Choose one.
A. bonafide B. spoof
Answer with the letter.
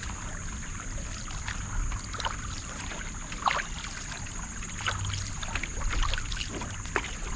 A